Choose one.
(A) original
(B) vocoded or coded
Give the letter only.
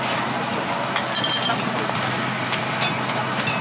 A